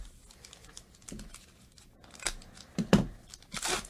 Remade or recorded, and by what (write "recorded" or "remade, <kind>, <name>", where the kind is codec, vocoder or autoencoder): recorded